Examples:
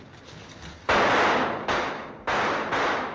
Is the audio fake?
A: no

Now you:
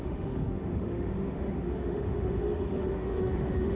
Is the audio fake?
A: yes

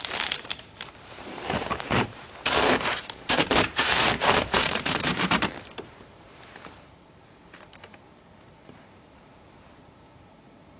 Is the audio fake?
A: yes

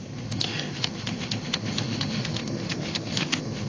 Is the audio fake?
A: yes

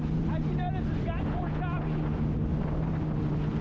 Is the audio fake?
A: no